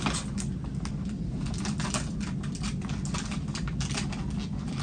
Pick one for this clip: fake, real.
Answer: real